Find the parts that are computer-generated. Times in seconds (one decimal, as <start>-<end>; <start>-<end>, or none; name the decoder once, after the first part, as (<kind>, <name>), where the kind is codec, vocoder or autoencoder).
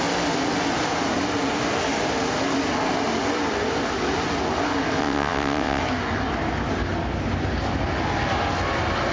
5.0-5.8 (vocoder, WaveNeXt)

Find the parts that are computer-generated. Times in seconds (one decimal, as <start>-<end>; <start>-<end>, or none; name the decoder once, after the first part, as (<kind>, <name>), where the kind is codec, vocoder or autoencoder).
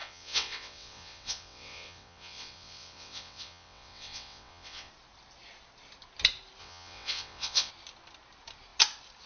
0.0-4.9 (vocoder, WaveNeXt); 6.6-7.7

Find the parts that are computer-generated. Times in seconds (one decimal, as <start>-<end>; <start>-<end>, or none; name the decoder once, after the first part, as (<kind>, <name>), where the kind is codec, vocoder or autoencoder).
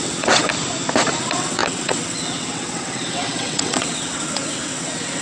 0.0-0.5 (vocoder, WaveNeXt); 1.2-5.2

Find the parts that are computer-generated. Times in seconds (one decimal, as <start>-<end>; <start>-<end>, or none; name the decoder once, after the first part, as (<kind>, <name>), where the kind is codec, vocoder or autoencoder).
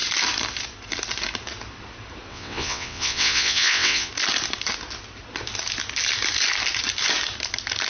2.3-4.1 (vocoder, WaveNeXt)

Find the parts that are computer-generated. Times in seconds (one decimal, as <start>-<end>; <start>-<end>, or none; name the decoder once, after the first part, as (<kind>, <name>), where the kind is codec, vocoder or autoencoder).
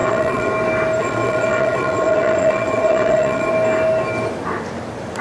0.0-0.5 (vocoder, WaveNeXt); 1.0-3.5